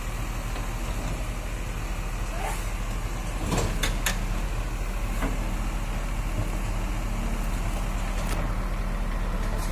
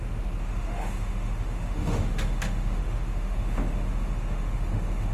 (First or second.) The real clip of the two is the first